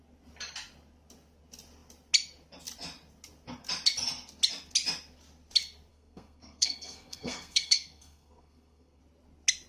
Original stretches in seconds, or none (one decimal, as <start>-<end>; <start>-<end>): 0.0-5.9; 9.0-9.7